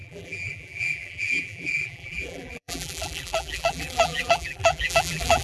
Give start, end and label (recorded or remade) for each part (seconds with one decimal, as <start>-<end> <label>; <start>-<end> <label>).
0.0-5.4 remade